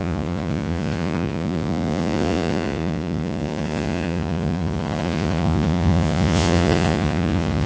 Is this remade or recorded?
remade